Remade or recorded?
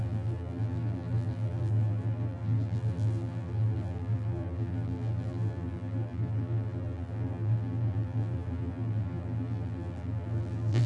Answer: remade